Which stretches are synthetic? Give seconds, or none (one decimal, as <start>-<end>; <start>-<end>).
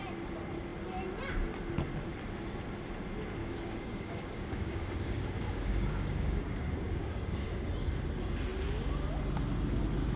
3.4-7.7